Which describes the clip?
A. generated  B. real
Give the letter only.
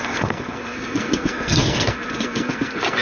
A